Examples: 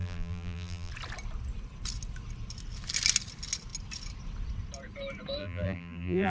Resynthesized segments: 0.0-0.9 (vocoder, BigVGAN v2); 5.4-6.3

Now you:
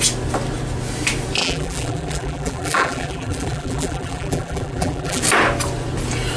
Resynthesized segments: 1.4-5.2 (vocoder, BigVGAN v2)

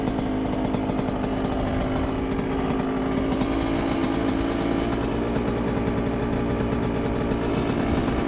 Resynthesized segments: none

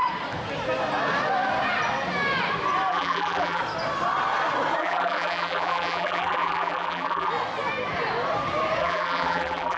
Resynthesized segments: 2.9-3.6 (vocoder, BigVGAN v2); 4.8-7.3; 8.8-9.8

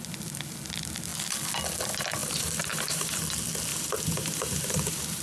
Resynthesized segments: 2.2-3.2 (vocoder, BigVGAN v2); 3.7-5.2

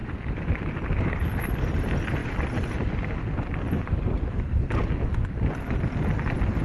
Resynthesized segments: 0.0-0.7 (vocoder, BigVGAN v2); 2.2-3.3

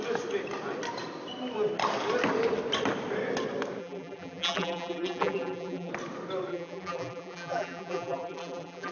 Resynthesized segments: 3.8-5.9 (vocoder, BigVGAN v2); 6.5-8.9

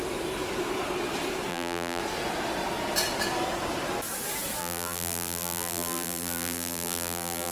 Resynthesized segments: 1.5-2.0 (vocoder, BigVGAN v2); 4.6-7.5